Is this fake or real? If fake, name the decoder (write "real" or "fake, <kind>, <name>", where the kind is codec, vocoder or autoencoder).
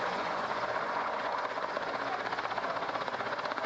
fake, vocoder, Vocos